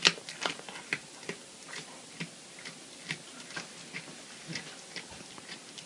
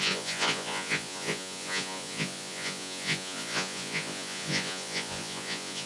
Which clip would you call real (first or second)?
first